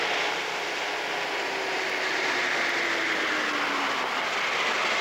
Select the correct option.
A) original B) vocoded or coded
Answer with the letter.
A